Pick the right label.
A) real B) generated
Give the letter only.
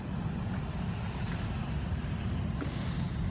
A